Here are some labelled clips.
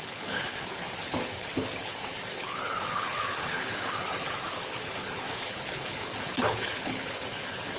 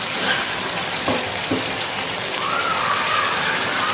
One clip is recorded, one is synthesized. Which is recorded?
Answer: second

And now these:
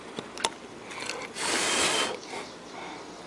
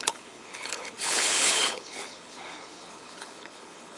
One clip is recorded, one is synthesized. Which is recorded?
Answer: first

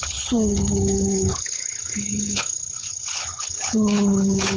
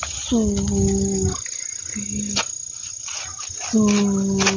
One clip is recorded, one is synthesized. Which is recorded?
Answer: second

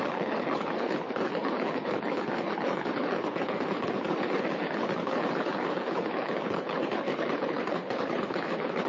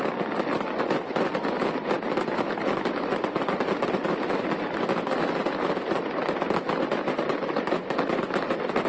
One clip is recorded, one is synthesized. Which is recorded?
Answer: second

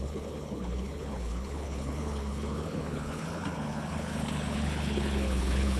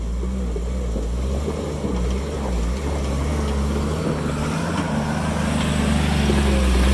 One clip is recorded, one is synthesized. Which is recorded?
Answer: second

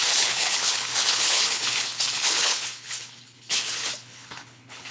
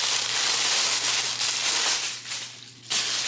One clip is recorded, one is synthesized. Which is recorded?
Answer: second